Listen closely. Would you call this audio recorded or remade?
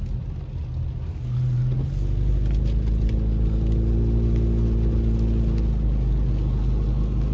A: recorded